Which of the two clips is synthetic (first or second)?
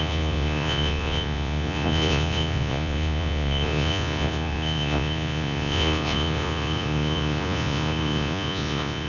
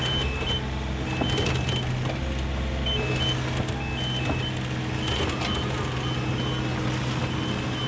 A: first